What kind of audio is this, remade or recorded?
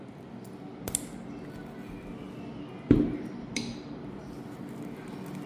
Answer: recorded